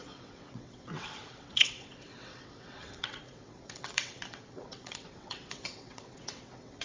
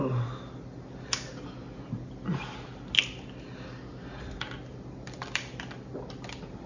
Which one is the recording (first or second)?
second